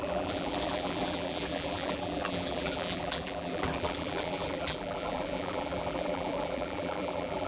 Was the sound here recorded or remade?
remade